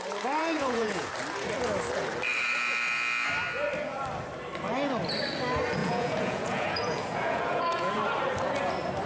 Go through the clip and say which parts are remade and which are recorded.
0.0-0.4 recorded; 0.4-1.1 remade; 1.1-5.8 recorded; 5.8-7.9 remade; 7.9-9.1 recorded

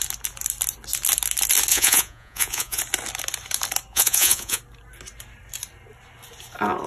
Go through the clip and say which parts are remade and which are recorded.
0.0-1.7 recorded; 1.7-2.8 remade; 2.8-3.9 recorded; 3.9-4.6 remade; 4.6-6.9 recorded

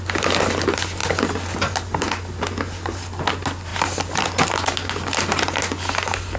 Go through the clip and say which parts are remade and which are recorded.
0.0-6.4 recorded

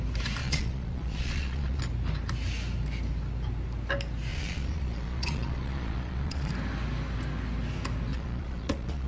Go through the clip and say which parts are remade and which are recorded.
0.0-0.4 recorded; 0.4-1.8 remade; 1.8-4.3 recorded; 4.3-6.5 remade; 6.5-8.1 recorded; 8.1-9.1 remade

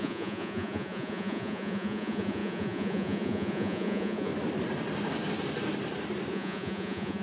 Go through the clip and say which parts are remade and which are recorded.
0.0-4.3 remade; 4.3-6.3 recorded; 6.3-7.2 remade

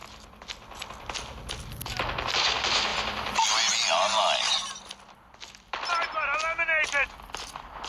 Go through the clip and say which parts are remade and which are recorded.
0.0-7.9 recorded

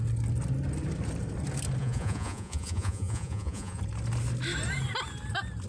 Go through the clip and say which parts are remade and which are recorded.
0.0-1.8 recorded; 1.8-3.8 remade; 3.8-5.7 recorded

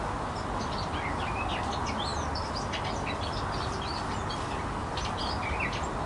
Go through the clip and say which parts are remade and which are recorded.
0.0-6.1 recorded